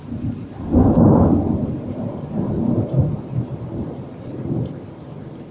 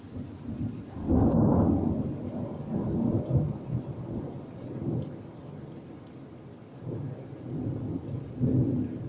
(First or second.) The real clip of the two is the second